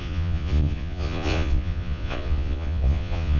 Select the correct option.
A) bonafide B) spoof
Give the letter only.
B